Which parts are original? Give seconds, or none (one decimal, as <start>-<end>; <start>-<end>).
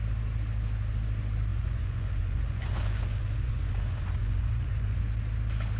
0.0-1.5; 5.0-5.8